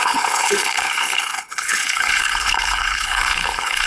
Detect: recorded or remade remade